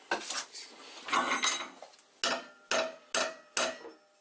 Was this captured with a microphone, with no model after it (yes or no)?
yes